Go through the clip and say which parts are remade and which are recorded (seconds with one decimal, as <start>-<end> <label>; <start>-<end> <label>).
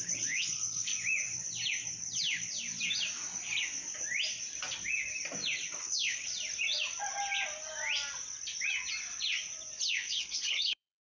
0.0-0.9 remade; 0.9-5.8 recorded; 5.8-6.3 remade; 6.3-9.9 recorded; 9.9-11.1 remade